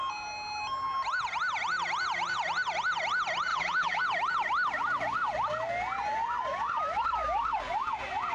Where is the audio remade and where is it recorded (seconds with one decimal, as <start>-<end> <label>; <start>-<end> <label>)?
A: 0.0-3.5 recorded; 3.5-4.0 remade; 4.0-8.3 recorded